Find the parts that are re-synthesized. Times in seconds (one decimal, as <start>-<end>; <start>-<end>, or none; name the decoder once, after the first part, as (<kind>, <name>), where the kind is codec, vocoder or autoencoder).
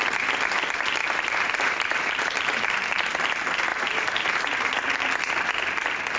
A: 1.0-3.1 (vocoder, BigVGAN v2); 3.7-4.7